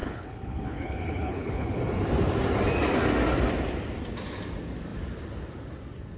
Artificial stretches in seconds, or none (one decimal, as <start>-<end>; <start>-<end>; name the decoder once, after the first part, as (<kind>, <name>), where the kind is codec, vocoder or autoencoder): 0.0-1.8 (codec, HILCodec)